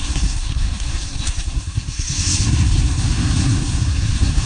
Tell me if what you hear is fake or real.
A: fake